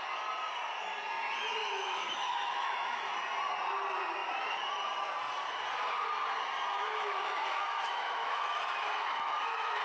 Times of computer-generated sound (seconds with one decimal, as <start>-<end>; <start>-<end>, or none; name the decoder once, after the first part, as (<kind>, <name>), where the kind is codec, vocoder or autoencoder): 1.6-3.1 (autoencoder, DAC-VAE); 6.7-9.8